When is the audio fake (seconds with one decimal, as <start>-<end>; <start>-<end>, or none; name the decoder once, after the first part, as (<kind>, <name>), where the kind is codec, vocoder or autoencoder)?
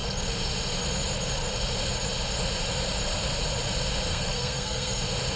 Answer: 4.1-5.0 (codec, SNAC)